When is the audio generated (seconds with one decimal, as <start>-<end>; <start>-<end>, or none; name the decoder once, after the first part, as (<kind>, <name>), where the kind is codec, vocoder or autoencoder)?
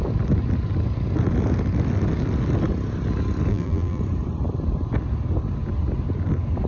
3.5-4.0 (vocoder, BigVGAN v2)